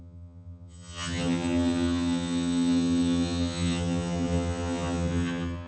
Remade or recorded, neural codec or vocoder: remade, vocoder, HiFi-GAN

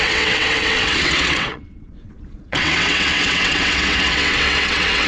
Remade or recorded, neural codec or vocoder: remade, vocoder, WaveNeXt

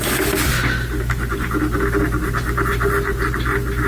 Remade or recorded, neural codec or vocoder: recorded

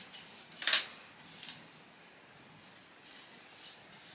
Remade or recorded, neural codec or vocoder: recorded